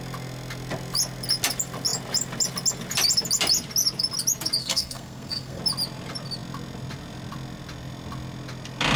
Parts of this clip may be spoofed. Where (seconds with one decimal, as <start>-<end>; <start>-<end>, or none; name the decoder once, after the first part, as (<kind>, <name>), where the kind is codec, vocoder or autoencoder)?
4.6-5.6 (codec, SNAC)